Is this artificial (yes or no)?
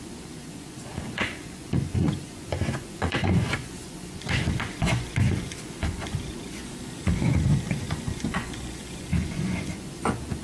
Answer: yes